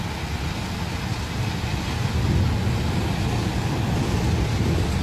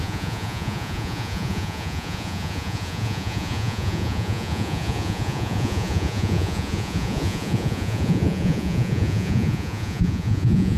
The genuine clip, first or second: first